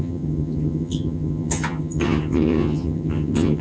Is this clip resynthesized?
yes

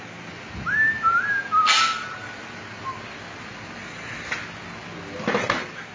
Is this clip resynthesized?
no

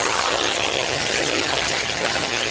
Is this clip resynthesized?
yes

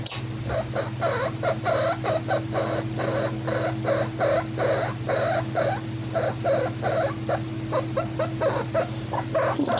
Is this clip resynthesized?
no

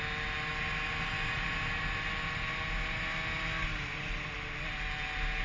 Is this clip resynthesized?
no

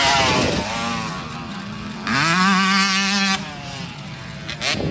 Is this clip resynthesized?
no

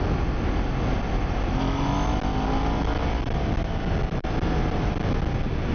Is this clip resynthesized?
no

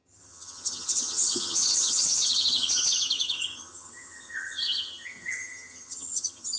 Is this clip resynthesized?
yes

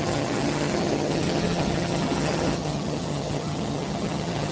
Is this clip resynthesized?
yes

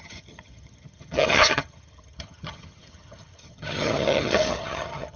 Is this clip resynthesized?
yes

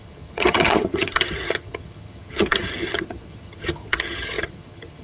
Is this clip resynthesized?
yes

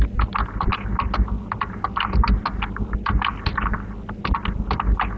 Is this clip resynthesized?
no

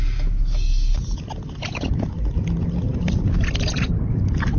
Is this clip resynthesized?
no